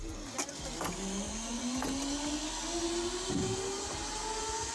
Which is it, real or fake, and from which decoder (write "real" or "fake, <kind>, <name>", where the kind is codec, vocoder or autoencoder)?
real